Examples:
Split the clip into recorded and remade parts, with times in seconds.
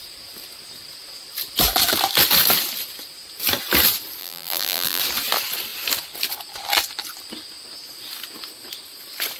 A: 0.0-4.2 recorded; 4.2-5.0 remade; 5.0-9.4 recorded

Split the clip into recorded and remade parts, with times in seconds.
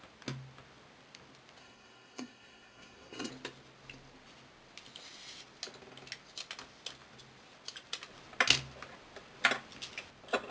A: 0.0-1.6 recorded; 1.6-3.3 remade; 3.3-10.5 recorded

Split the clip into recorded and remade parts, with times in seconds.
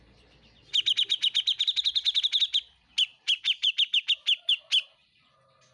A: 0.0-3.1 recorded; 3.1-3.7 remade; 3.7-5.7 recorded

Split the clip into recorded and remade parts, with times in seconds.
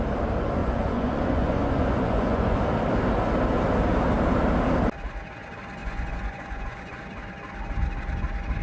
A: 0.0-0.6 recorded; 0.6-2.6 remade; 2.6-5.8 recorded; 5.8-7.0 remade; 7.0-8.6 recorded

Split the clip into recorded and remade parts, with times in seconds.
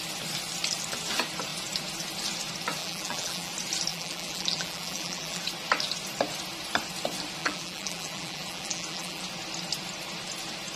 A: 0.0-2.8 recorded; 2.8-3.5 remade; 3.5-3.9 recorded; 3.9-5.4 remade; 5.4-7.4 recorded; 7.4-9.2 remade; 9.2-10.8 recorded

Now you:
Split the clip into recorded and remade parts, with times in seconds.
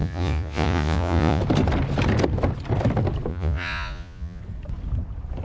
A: 0.0-1.4 remade; 1.4-3.3 recorded; 3.3-4.4 remade; 4.4-5.4 recorded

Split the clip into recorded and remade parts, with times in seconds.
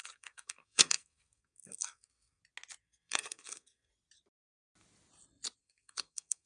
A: 0.0-2.4 remade; 2.4-2.8 recorded; 2.8-3.9 remade; 3.9-5.6 recorded; 5.6-6.5 remade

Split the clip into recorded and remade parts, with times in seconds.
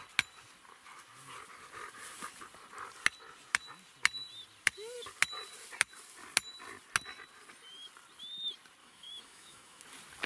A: 0.0-8.8 recorded; 8.8-9.8 remade; 9.8-10.3 recorded